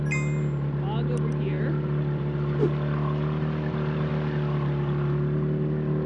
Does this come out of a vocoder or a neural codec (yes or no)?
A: no